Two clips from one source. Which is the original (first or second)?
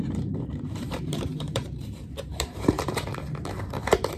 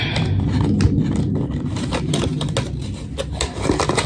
second